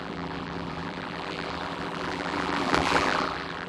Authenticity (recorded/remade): remade